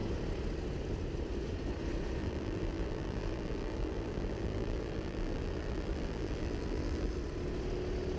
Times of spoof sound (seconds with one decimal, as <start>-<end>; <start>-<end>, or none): 2.2-7.1